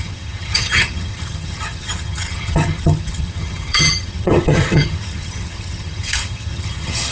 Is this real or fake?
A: fake